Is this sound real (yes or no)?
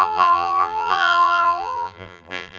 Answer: no